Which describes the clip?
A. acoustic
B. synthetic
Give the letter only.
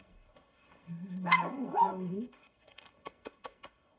B